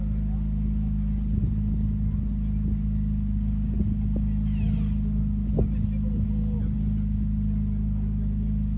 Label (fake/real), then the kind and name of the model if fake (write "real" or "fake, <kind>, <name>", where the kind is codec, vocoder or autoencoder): real